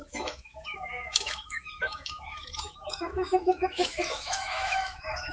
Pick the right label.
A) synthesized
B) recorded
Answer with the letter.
A